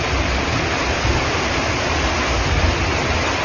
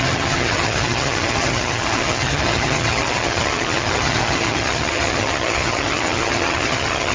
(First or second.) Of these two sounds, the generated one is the second